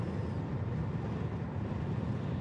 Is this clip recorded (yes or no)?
yes